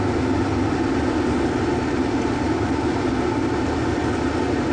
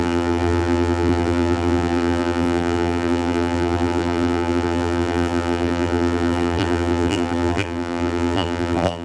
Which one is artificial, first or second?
second